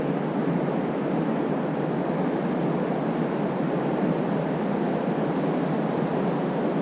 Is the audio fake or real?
real